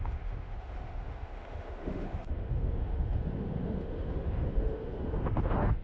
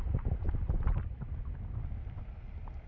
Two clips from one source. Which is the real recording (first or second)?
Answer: second